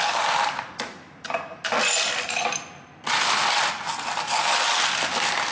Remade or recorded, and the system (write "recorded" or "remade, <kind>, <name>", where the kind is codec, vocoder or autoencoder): recorded